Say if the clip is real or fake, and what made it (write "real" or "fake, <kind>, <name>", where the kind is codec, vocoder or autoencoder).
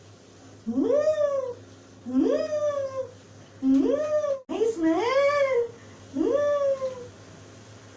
real